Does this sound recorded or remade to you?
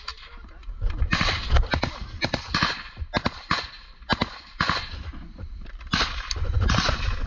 recorded